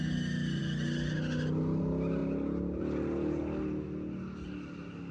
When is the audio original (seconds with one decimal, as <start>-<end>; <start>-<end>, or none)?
0.0-5.1